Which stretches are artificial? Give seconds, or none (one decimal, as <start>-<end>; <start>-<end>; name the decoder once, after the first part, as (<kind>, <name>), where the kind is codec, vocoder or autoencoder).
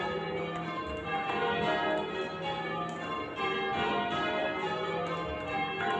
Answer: none